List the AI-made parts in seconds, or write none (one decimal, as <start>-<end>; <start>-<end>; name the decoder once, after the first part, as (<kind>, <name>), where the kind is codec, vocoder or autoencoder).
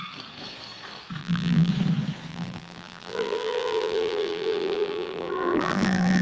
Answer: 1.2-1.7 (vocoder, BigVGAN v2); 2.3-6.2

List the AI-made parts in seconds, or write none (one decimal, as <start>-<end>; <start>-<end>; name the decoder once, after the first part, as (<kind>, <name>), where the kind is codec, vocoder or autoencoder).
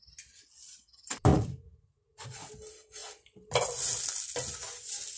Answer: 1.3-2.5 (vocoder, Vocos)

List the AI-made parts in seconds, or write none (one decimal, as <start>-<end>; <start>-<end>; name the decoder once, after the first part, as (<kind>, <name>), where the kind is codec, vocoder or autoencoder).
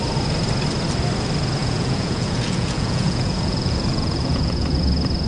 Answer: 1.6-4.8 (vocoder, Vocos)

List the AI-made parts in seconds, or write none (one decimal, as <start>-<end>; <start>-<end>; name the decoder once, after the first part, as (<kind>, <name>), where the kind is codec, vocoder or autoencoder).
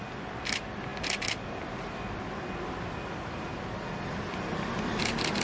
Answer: none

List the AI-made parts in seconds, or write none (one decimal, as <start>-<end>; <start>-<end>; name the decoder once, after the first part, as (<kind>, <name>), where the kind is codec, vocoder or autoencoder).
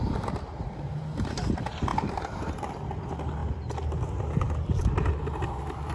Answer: 1.9-2.7 (vocoder, BigVGAN v2)